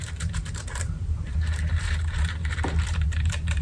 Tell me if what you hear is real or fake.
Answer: fake